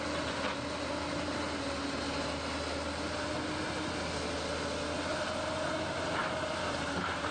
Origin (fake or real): real